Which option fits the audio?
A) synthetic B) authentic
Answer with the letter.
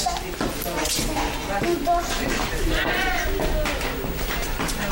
B